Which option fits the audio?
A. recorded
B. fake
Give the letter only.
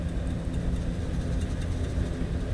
A